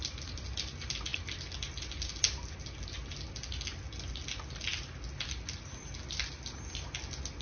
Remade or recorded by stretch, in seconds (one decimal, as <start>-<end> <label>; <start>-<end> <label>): 0.0-7.4 recorded

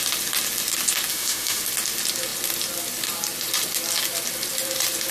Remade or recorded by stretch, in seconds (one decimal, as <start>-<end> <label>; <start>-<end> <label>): 0.0-1.1 recorded; 1.1-1.6 remade; 1.6-5.1 recorded

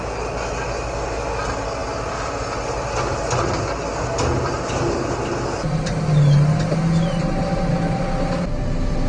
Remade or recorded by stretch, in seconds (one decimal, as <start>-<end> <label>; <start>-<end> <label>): 0.0-9.1 recorded

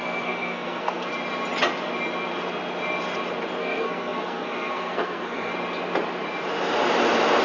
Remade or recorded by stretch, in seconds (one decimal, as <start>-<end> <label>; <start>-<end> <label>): 0.0-1.1 remade; 1.1-3.6 recorded; 3.6-5.5 remade; 5.5-7.4 recorded

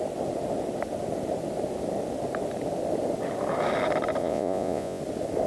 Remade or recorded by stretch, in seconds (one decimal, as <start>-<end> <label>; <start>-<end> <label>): 0.0-4.2 recorded; 4.2-5.0 remade; 5.0-5.5 recorded

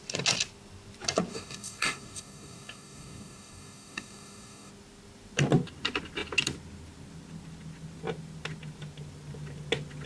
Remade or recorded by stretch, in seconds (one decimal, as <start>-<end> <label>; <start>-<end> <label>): 0.0-1.3 recorded; 1.3-4.7 remade; 4.7-10.1 recorded

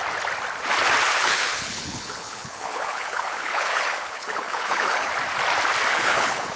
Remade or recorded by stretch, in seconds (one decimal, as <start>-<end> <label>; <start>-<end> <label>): 0.0-1.1 recorded; 1.1-5.1 remade; 5.1-5.9 recorded; 5.9-6.6 remade